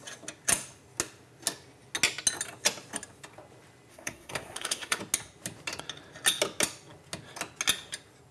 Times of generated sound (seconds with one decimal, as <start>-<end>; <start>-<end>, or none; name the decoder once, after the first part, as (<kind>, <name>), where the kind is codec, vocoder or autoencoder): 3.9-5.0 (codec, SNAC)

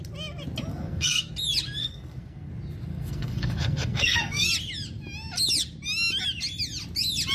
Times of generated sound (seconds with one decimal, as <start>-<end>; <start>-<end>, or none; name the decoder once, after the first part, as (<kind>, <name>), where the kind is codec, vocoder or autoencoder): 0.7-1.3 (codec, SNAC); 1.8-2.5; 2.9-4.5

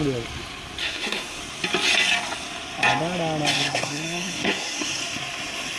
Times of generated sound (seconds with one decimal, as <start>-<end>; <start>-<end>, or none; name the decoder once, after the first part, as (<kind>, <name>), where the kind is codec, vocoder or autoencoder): 0.8-1.4 (codec, SNAC); 3.5-5.0

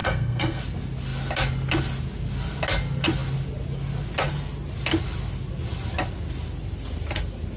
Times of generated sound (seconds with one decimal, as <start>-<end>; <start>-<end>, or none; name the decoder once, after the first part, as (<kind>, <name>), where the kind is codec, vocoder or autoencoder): 0.0-0.6 (codec, SNAC)

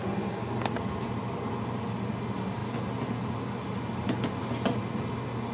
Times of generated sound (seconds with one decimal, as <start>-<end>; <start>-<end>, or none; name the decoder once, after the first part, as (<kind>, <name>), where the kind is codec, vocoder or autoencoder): none